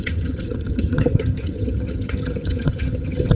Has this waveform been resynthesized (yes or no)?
yes